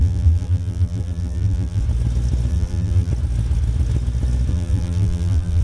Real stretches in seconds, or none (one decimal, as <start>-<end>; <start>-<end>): 1.8-2.5; 3.1-4.5